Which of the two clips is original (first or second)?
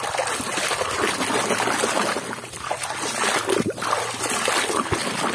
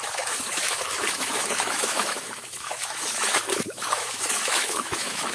first